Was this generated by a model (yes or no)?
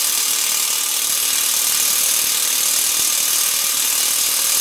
no